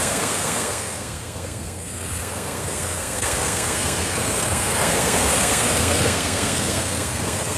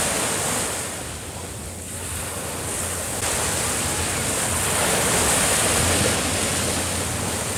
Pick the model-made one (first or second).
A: first